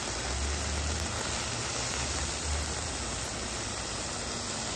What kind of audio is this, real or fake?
real